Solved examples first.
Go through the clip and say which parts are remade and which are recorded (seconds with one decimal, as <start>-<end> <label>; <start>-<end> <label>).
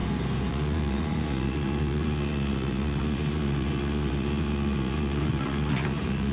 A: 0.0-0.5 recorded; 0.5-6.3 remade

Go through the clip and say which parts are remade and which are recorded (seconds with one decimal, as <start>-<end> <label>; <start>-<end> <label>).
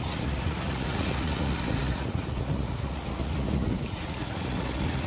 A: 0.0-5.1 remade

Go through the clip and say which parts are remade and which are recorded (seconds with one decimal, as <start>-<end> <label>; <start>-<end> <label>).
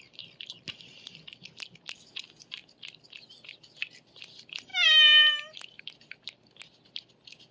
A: 0.0-7.5 recorded